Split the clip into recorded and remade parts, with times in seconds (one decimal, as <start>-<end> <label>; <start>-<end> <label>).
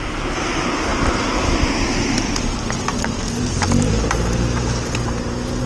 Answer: 0.0-5.7 recorded